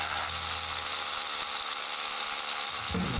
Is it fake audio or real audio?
real